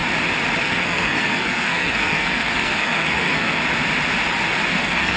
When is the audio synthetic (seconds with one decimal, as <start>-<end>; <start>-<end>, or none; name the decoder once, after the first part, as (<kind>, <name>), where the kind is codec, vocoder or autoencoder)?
0.6-3.6 (codec, SNAC); 4.7-5.2